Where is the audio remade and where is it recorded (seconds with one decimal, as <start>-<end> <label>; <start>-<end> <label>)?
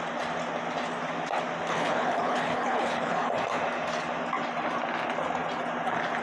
0.0-1.7 recorded; 1.7-3.3 remade; 3.3-6.2 recorded